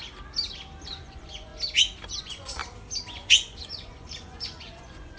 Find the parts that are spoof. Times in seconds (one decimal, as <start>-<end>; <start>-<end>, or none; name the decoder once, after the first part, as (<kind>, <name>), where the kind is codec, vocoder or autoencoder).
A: 0.9-1.5 (vocoder, Vocos); 2.2-2.6; 3.1-5.2